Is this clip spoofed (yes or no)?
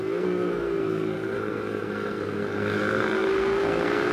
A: yes